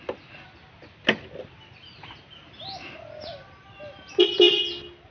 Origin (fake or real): real